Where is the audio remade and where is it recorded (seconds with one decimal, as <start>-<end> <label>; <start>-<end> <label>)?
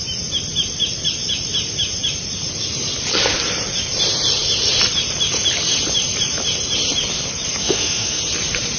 0.0-7.6 recorded; 7.6-8.2 remade; 8.2-8.8 recorded